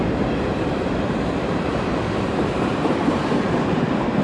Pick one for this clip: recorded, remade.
remade